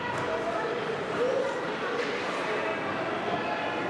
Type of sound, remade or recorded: recorded